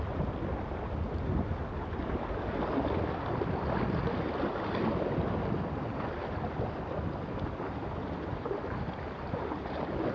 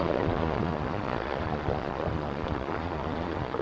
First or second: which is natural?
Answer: first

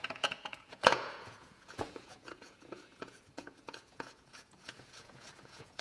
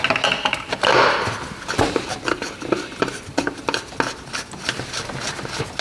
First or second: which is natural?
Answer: second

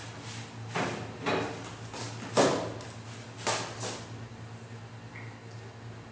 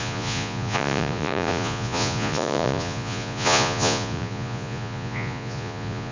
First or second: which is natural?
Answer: first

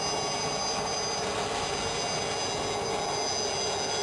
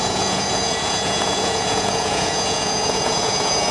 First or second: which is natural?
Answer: first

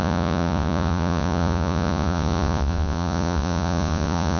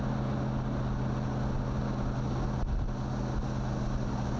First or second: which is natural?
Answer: second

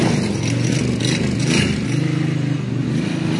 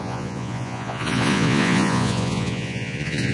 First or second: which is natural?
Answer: first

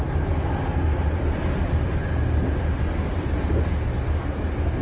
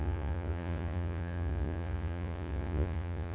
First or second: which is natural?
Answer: first